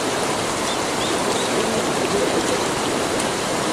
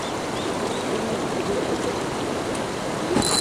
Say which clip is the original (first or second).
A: second